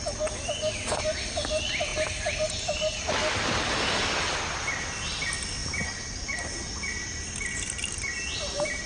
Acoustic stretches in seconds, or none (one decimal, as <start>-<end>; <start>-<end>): 0.0-5.6; 6.4-8.9